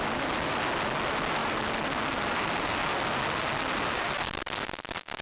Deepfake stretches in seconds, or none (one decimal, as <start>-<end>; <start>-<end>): none